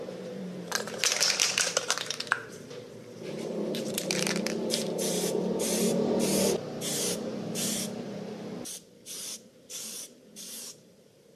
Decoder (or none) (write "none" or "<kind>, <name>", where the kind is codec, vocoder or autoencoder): vocoder, BigVGAN v2